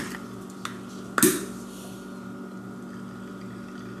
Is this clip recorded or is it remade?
recorded